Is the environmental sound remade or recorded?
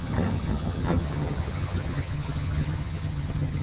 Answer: remade